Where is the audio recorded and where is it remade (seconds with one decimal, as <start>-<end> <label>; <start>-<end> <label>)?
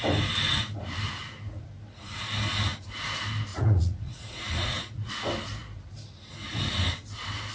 0.0-3.5 recorded; 3.5-5.1 remade; 5.1-7.5 recorded